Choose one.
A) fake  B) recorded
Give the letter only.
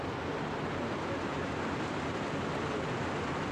B